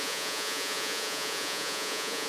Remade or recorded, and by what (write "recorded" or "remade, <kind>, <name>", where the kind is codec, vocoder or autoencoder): remade, vocoder, Vocos